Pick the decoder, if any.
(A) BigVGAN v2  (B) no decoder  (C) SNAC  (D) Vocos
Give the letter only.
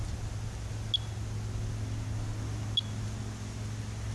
B